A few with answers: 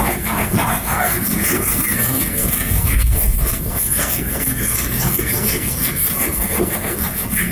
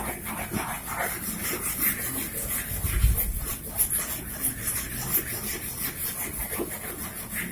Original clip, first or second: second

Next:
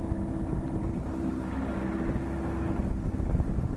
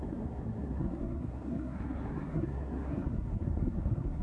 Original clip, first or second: first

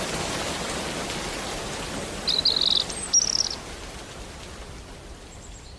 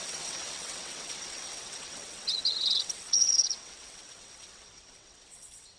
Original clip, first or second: first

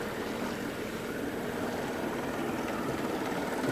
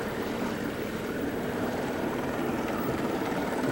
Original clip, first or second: first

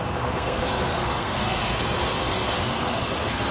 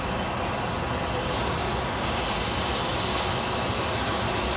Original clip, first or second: second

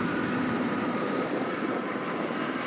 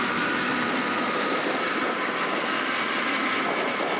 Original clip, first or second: second